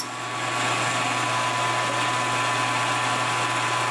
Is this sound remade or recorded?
recorded